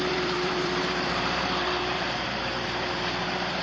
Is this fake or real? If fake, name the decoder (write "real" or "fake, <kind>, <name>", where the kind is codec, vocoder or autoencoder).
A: fake, vocoder, BigVGAN v2